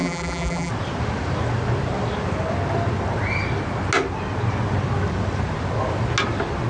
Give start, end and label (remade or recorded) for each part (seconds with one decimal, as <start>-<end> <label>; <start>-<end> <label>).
0.0-0.7 remade; 0.7-6.7 recorded